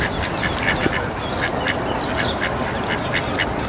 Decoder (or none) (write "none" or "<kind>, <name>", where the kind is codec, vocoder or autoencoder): none